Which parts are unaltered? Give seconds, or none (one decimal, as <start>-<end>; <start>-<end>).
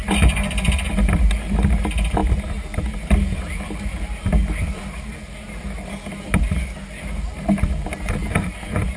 0.0-9.0